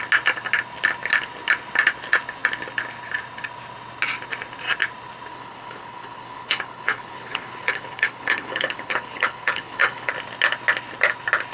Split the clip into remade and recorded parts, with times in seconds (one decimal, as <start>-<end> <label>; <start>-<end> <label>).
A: 0.0-5.3 recorded; 5.3-10.1 remade; 10.1-11.5 recorded